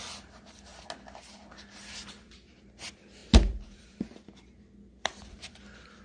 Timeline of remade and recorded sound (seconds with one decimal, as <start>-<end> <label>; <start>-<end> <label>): 0.0-6.0 recorded